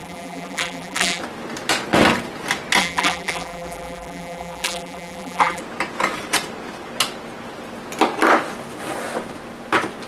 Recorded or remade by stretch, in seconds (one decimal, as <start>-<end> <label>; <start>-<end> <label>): 0.0-1.2 remade; 1.2-2.8 recorded; 2.8-5.6 remade; 5.6-10.1 recorded